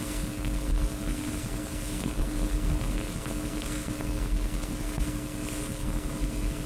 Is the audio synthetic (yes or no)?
yes